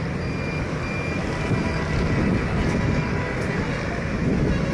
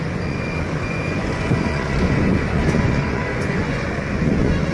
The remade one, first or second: second